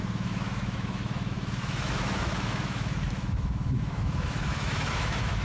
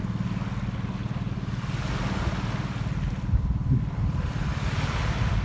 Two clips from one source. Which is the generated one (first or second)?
first